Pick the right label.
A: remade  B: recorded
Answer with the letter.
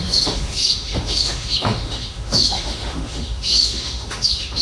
A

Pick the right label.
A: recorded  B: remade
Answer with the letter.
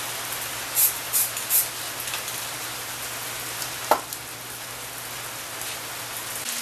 A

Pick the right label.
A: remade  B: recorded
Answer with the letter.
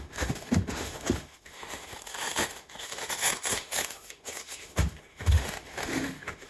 A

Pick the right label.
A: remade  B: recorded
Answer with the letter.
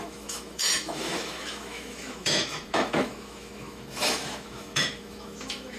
A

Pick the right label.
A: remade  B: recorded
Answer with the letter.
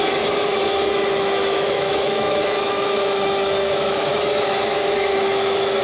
A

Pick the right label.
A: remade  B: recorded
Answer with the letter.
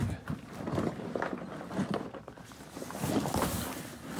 B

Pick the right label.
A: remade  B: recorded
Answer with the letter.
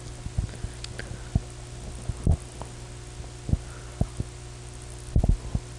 B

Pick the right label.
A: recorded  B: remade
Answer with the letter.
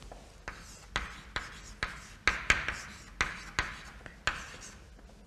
A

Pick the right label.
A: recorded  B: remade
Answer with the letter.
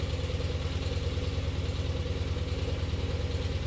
A